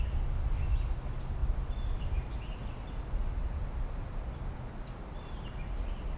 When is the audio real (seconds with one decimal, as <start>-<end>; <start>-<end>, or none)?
0.0-6.2